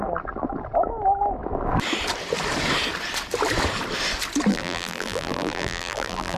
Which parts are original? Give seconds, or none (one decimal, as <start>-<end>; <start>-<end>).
0.0-4.5